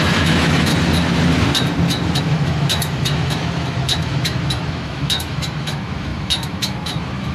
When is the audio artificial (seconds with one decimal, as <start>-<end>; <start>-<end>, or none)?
0.0-0.7; 2.2-7.3